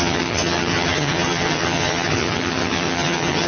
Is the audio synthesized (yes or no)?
yes